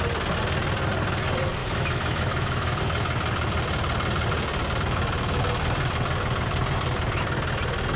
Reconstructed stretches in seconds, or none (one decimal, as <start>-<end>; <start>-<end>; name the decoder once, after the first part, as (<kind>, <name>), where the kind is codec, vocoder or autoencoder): 1.6-2.8 (autoencoder, DAC-VAE)